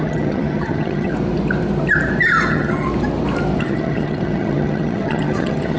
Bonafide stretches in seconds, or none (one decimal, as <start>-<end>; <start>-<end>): 1.1-2.5; 2.9-3.6